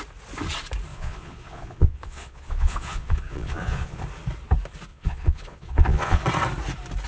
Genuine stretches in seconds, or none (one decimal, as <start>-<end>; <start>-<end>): 0.0-0.9; 4.0-4.9; 6.2-7.1